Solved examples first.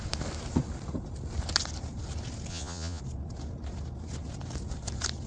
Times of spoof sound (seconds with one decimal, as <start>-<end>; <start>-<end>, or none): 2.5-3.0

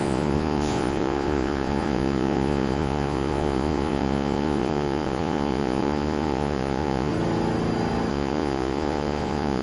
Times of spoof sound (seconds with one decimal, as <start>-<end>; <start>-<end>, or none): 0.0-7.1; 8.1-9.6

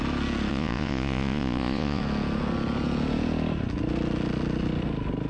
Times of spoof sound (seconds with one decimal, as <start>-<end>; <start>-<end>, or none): 0.5-2.0

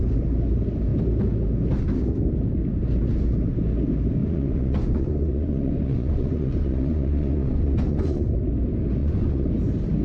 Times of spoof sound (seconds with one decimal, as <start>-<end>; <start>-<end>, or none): 4.2-8.3; 9.0-9.5

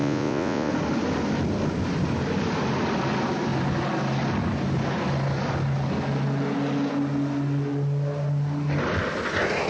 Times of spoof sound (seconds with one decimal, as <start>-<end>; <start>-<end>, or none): 0.0-0.7

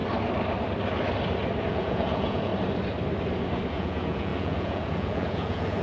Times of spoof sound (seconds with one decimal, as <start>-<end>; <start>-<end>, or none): 1.7-2.5; 3.7-5.8

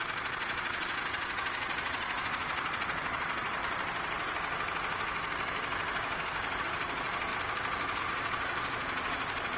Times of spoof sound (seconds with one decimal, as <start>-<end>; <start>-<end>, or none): 0.0-3.6; 6.6-7.3; 8.0-9.6

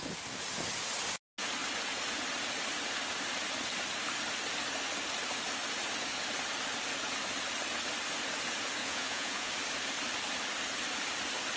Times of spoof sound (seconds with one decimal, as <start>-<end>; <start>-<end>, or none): 8.8-9.5